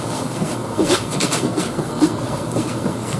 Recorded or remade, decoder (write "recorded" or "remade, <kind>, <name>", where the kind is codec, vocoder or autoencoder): remade, codec, SNAC